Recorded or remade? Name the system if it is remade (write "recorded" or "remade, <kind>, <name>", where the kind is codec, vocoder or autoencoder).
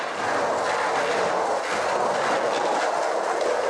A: recorded